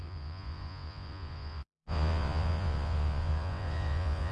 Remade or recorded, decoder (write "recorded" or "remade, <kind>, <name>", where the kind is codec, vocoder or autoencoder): remade, vocoder, Vocos